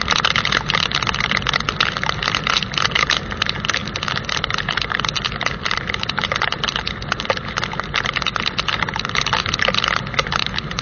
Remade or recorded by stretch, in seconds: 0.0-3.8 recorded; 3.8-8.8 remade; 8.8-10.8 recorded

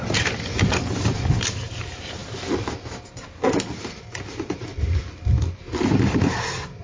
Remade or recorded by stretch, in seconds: 0.0-1.4 recorded; 1.4-2.2 remade; 2.2-3.9 recorded; 3.9-4.7 remade; 4.7-5.8 recorded; 5.8-6.8 remade

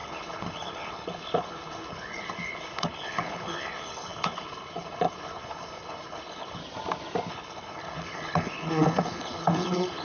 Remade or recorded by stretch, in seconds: 0.0-6.6 remade; 6.6-7.3 recorded; 7.3-10.0 remade

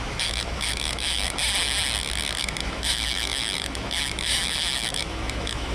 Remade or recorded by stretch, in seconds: 0.0-1.4 remade; 1.4-2.4 recorded; 2.4-5.7 remade

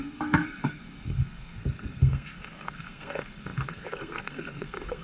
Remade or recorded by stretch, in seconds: 0.0-5.0 remade

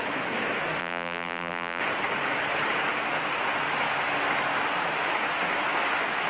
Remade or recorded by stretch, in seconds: 0.0-0.8 recorded; 0.8-1.8 remade; 1.8-6.3 recorded

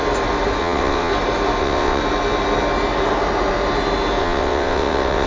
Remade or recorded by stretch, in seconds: 0.0-0.6 recorded; 0.6-1.1 remade; 1.1-1.6 recorded; 1.6-2.0 remade; 2.0-4.2 recorded; 4.2-5.3 remade